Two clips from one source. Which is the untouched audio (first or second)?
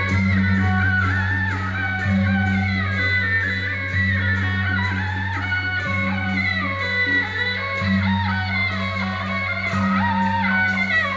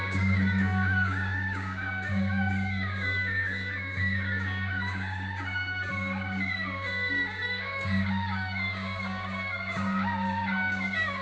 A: first